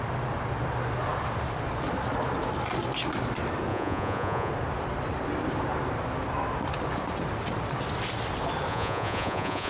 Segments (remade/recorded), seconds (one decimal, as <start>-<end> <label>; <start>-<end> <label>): 0.0-3.7 recorded; 3.7-4.5 remade; 4.5-8.7 recorded; 8.7-9.7 remade